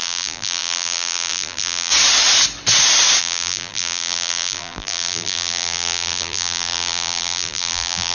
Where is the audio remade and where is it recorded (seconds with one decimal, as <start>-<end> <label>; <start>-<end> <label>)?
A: 0.0-1.9 remade; 1.9-3.2 recorded; 3.2-8.1 remade